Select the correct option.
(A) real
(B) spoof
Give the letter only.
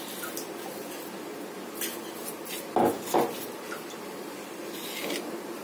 A